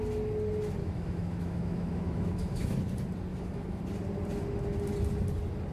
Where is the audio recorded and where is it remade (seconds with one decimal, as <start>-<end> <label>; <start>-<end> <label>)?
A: 0.0-0.8 recorded; 0.8-2.8 remade; 2.8-3.3 recorded; 3.3-3.8 remade; 3.8-5.7 recorded